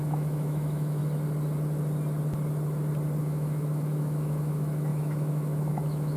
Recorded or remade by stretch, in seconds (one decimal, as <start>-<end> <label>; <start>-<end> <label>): 0.0-1.0 remade; 1.0-3.2 recorded; 3.2-6.2 remade